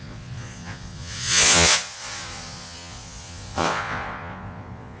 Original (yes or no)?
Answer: no